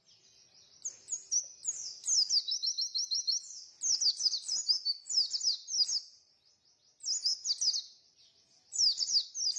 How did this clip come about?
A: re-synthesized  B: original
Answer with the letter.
B